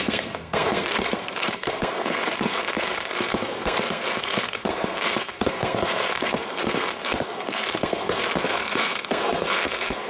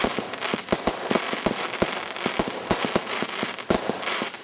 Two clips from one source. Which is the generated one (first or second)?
first